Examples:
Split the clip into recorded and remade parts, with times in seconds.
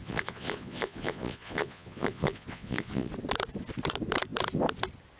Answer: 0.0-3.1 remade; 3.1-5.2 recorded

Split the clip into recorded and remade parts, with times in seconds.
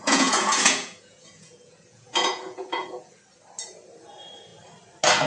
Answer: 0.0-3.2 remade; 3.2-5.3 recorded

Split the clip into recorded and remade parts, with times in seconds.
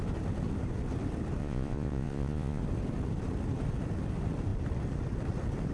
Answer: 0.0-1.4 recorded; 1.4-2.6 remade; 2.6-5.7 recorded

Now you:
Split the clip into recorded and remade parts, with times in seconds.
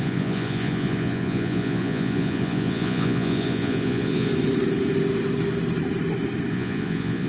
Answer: 0.0-4.3 remade; 4.3-6.5 recorded; 6.5-7.3 remade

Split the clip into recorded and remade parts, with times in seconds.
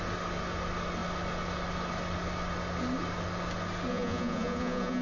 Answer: 0.0-3.9 recorded; 3.9-5.0 remade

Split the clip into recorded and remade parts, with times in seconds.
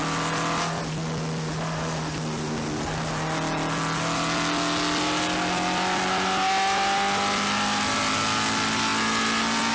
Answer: 0.0-9.7 recorded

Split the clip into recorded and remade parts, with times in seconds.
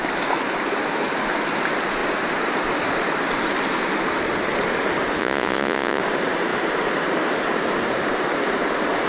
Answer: 0.0-5.2 recorded; 5.2-6.0 remade; 6.0-9.1 recorded